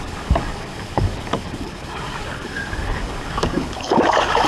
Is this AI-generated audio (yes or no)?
yes